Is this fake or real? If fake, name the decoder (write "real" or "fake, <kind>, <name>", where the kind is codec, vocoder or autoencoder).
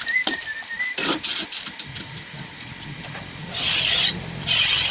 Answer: fake, vocoder, BigVGAN v2